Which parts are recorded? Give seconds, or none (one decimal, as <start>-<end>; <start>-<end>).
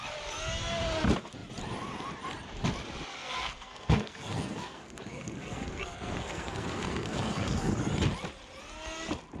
0.0-3.2; 7.7-9.4